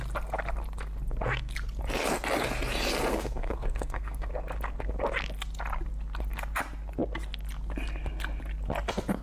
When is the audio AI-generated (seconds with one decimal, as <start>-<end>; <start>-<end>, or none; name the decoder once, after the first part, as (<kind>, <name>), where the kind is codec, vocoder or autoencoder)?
3.1-4.3 (codec, SNAC)